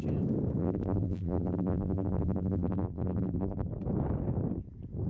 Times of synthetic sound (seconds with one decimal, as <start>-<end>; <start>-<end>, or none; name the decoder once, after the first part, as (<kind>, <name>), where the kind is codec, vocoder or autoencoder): 0.6-3.7 (vocoder, BigVGAN v2)